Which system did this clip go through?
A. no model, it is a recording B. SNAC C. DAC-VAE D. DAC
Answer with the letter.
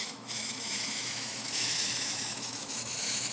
C